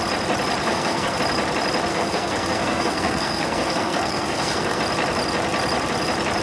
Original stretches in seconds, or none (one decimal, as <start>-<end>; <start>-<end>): 0.0-0.6; 1.2-1.9; 4.8-6.4